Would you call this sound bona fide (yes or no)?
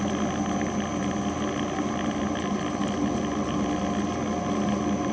yes